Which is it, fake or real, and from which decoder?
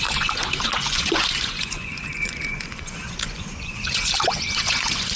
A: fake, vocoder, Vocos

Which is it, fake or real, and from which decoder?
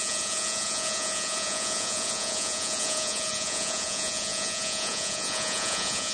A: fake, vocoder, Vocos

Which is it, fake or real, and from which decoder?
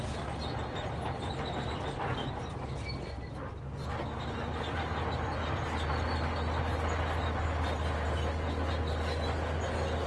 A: real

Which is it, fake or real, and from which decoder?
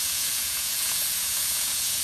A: fake, vocoder, Vocos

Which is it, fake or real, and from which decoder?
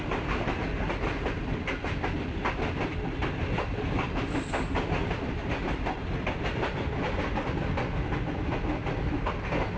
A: real